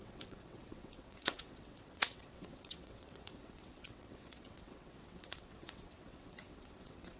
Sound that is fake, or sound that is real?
fake